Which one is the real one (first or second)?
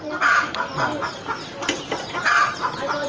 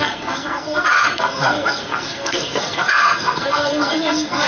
first